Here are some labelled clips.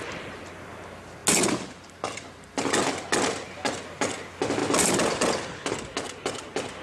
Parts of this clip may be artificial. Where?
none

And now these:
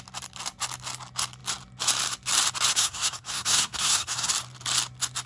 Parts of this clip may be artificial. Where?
2.7-4.3

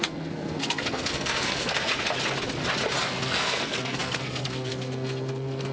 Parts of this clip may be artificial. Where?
0.0-1.9; 3.0-5.7

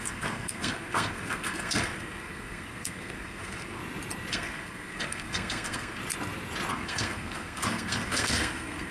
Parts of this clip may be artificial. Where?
0.0-3.8; 4.3-6.0; 6.7-8.9

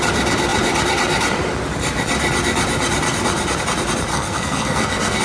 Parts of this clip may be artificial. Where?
4.1-5.2

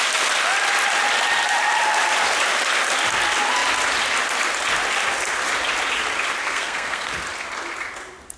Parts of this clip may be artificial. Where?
6.4-7.1

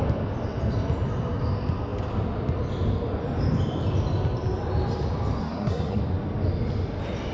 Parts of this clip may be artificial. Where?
5.4-6.0